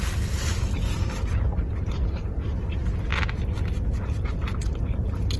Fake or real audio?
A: real